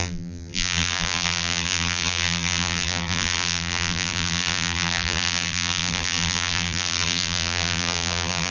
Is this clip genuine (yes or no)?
no